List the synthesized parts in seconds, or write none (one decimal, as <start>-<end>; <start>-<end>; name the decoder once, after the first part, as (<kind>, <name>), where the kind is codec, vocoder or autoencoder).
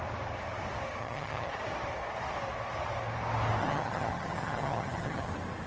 1.0-1.5 (vocoder, HiFi-GAN); 3.6-5.3